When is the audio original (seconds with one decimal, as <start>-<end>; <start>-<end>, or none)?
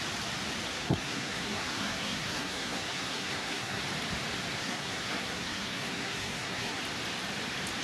0.0-0.7; 3.8-4.6; 6.8-7.8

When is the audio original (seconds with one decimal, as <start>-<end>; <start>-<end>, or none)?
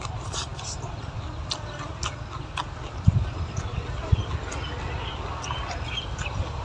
0.0-6.6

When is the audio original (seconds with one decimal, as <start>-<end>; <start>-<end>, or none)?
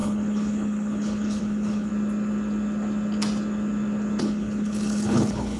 1.9-4.2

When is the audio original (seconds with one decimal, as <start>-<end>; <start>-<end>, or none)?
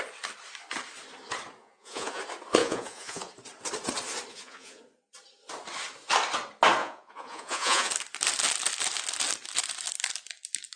0.0-1.6; 2.2-2.6; 3.3-4.3; 4.8-6.8; 7.9-10.8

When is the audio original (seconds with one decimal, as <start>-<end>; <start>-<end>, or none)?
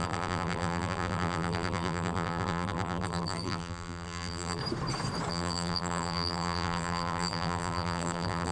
4.6-5.3